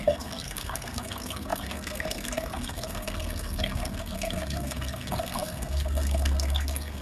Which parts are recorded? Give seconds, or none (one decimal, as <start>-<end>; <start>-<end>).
none